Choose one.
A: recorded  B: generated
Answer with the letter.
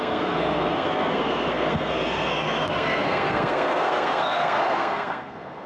B